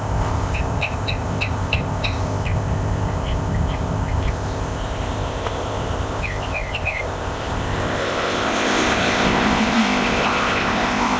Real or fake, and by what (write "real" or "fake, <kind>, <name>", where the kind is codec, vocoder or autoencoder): fake, codec, ZipCodec